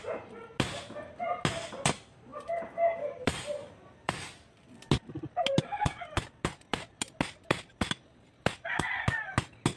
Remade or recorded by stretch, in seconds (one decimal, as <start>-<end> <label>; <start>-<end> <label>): 0.0-2.3 recorded; 2.3-4.1 remade; 4.1-9.8 recorded